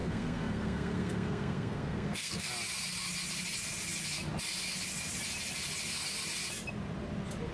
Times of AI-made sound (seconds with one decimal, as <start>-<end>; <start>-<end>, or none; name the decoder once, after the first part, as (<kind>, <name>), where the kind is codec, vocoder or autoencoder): 0.0-2.5 (codec, SNAC)